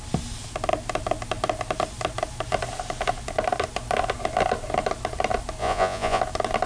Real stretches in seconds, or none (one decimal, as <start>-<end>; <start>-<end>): 0.0-5.6; 6.2-6.7